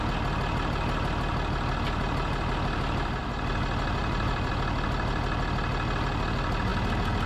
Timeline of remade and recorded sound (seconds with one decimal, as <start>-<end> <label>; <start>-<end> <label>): 0.0-4.0 recorded; 4.0-4.5 remade; 4.5-7.3 recorded